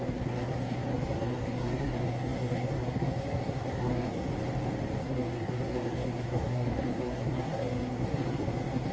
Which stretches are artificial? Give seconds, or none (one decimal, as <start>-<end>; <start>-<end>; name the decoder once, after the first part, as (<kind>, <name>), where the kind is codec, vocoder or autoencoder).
0.0-4.3 (codec, SNAC); 5.0-8.9